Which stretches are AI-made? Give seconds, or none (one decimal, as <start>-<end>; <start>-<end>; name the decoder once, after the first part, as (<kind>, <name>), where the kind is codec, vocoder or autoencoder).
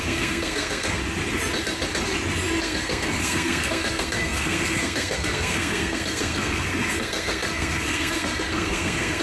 0.0-1.0 (codec, SNAC); 2.6-9.2